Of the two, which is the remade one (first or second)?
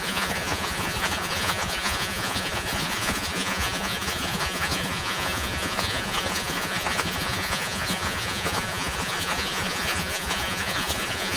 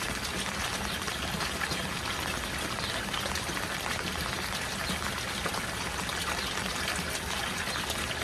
first